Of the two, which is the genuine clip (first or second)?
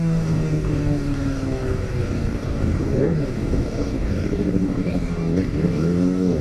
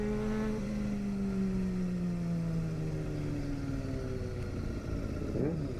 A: second